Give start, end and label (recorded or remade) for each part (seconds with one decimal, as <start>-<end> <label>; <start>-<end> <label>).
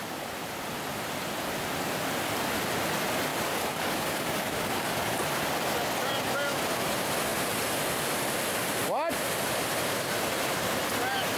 0.0-3.3 recorded; 3.3-5.1 remade; 5.1-11.4 recorded